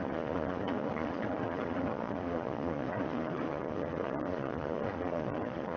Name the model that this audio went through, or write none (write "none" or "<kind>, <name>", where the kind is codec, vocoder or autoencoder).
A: vocoder, Vocos